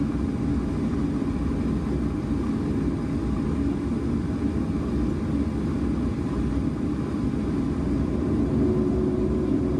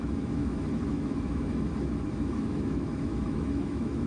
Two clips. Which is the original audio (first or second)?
first